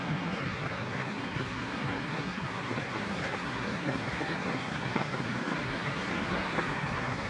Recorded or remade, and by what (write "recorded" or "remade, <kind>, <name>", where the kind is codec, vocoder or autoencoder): remade, codec, SNAC